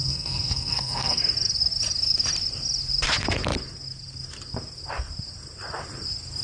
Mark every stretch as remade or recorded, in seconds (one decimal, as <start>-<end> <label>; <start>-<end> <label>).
0.0-1.2 remade; 1.2-6.4 recorded